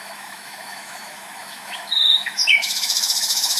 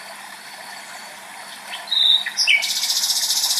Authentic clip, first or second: second